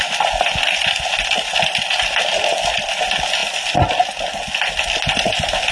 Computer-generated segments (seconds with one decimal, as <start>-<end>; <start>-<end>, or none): none

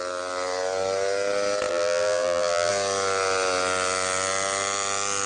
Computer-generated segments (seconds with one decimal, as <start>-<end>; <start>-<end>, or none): 1.7-2.7

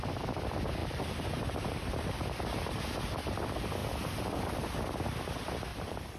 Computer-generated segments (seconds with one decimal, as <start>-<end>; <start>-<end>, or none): 0.8-2.3; 5.7-6.2